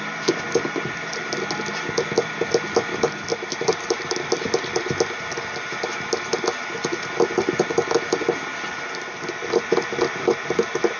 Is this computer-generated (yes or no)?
no